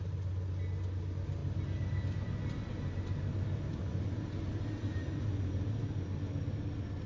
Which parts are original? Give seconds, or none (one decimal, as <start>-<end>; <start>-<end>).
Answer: 0.0-7.1